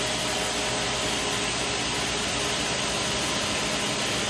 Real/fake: real